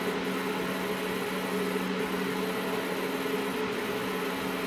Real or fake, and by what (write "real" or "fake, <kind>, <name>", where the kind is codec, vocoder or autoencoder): real